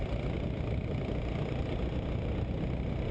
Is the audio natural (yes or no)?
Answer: yes